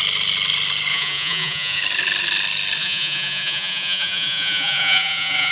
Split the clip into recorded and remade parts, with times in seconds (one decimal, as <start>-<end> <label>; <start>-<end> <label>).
0.0-0.9 recorded; 0.9-1.8 remade; 1.8-2.8 recorded; 2.8-5.5 remade